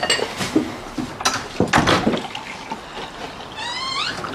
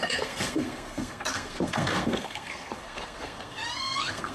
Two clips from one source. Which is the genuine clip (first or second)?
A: first